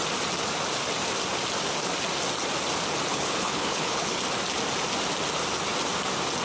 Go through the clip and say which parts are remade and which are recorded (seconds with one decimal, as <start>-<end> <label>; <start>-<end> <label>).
0.0-3.1 recorded; 3.1-4.2 remade; 4.2-6.4 recorded